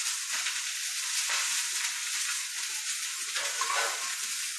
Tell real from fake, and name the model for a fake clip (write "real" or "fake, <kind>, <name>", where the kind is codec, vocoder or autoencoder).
real